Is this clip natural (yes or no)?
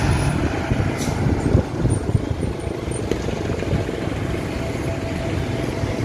yes